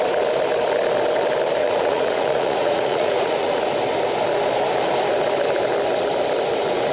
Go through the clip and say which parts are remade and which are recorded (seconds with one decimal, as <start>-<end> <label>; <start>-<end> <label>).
0.0-1.6 recorded; 1.6-3.6 remade; 3.6-6.9 recorded